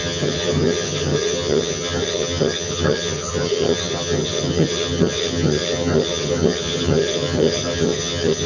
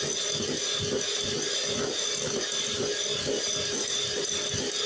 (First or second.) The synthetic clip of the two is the first